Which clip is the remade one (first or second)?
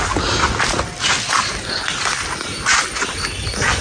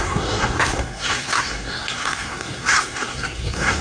second